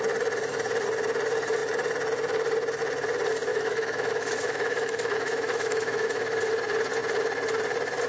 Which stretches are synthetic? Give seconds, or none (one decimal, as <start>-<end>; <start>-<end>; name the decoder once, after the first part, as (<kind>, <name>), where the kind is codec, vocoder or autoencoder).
3.5-6.4 (autoencoder, DAC-VAE)